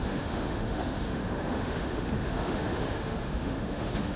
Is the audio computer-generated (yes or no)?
yes